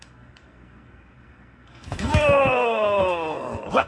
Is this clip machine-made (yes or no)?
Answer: yes